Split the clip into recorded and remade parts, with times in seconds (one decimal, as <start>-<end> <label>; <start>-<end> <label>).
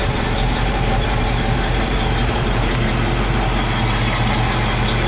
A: 0.0-2.9 remade; 2.9-5.1 recorded